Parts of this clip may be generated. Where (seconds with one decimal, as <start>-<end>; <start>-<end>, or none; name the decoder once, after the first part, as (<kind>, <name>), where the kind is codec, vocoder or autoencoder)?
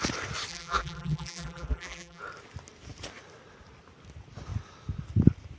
0.5-2.2 (vocoder, BigVGAN v2)